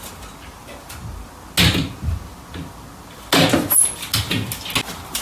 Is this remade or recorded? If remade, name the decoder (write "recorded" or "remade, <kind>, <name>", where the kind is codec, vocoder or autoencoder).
recorded